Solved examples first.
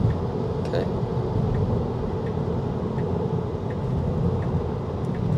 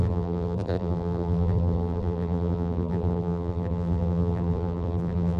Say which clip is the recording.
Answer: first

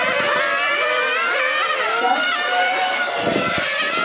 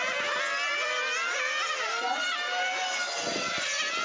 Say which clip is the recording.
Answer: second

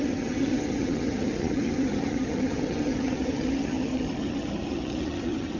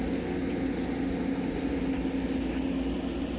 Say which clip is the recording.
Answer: second